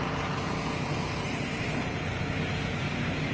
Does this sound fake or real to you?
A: real